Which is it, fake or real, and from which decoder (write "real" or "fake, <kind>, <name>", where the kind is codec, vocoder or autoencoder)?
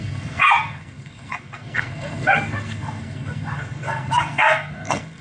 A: fake, codec, SNAC